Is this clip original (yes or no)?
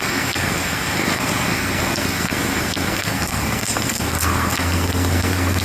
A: no